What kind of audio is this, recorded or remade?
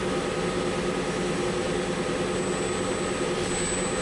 recorded